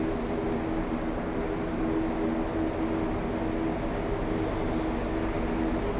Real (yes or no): yes